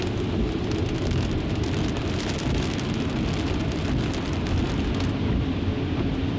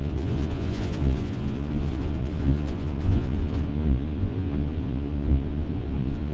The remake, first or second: second